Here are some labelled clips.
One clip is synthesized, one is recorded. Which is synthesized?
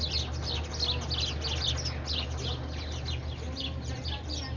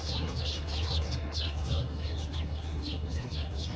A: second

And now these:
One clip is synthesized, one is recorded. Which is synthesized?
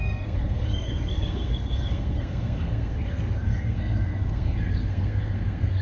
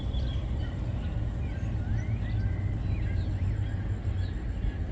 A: first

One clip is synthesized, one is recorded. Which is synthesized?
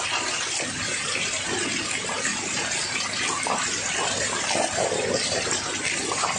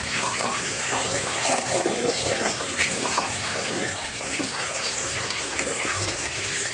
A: second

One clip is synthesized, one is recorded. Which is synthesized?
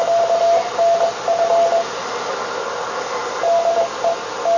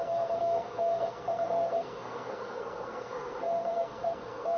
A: second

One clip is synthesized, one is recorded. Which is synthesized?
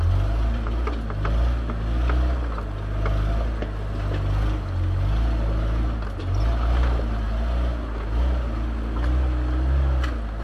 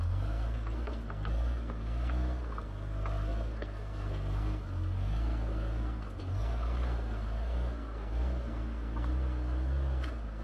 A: second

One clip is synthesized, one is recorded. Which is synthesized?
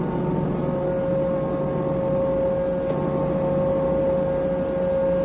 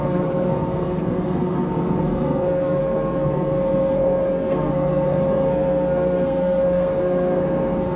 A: second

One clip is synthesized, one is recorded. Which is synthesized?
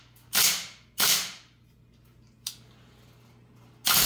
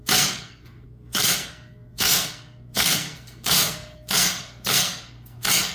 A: second